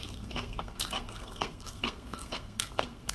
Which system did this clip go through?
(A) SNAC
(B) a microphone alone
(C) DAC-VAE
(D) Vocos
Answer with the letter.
A